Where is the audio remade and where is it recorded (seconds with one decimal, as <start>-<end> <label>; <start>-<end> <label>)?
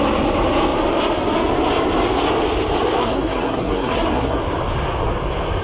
0.0-3.0 recorded; 3.0-4.4 remade; 4.4-5.6 recorded